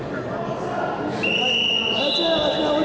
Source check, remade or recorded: recorded